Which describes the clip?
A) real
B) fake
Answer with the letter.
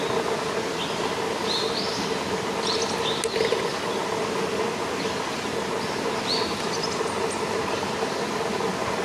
A